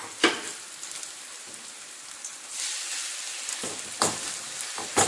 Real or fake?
real